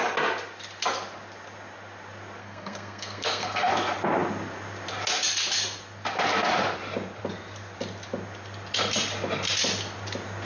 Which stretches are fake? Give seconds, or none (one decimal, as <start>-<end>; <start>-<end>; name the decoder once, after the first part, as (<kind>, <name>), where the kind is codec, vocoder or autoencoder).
2.4-3.7 (codec, SNAC)